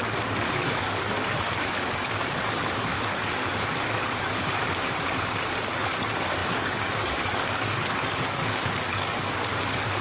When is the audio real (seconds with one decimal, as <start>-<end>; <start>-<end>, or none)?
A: none